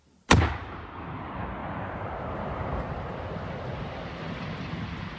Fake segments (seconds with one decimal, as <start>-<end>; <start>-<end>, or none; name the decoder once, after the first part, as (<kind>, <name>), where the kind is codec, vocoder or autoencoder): none